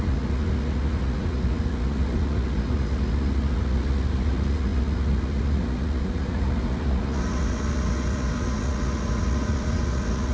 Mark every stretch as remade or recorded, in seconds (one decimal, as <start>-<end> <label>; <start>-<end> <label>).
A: 0.0-10.3 remade